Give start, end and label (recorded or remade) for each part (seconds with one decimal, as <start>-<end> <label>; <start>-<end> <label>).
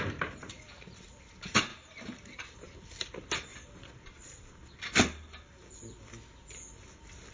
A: 0.0-7.3 recorded